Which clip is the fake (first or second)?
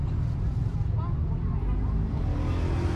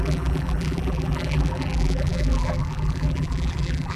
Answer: second